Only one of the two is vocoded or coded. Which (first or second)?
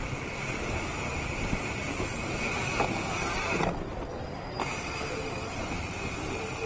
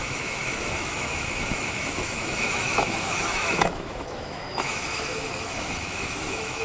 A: second